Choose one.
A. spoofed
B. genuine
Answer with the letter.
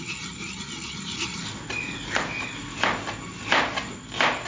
B